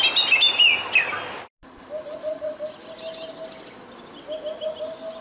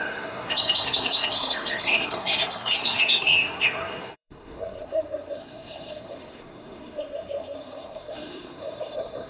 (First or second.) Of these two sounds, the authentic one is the first